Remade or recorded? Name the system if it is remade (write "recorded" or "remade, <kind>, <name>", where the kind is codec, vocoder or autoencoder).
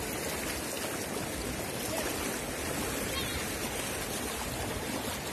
recorded